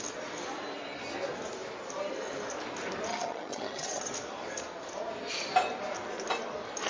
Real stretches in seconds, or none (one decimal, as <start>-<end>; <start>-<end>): 0.0-3.1; 4.0-6.9